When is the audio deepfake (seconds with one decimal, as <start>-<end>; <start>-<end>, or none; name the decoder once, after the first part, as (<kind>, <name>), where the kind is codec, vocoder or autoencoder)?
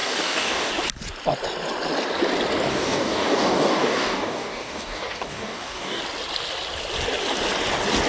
0.0-0.7 (codec, DAC); 2.7-6.0